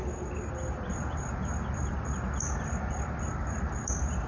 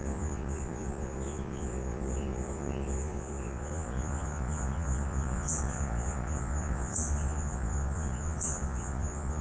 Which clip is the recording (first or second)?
first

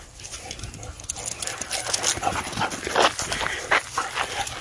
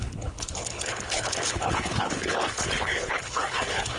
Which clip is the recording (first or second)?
first